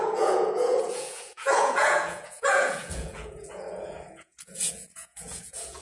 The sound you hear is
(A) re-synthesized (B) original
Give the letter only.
A